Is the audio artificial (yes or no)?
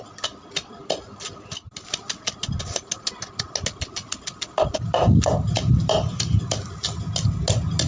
no